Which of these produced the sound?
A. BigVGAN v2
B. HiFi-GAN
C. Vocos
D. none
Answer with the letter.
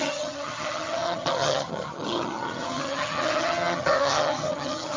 B